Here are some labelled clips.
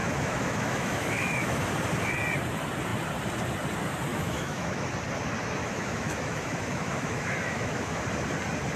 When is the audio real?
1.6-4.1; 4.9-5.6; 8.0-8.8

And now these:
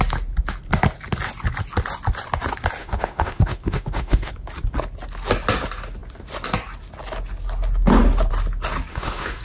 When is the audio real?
0.0-2.8; 4.3-8.9

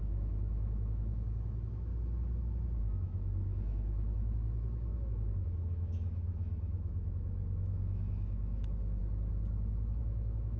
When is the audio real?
1.9-2.8; 9.0-10.0

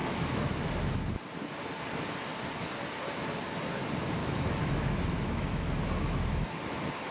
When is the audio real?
0.8-4.2; 6.6-7.1

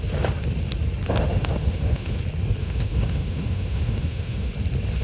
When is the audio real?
0.0-1.2; 2.2-2.6; 4.5-5.0

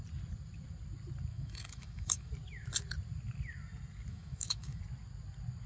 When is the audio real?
0.0-1.3; 2.3-4.1; 4.8-5.7

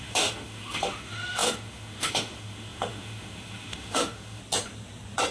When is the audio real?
4.4-5.3

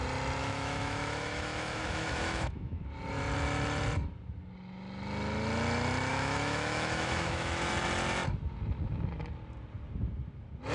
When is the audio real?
0.0-0.4; 2.8-6.1; 7.7-10.7